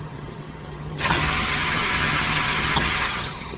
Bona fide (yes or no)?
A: no